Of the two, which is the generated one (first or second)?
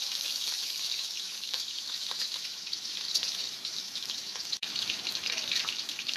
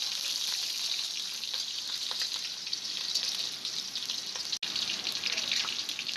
first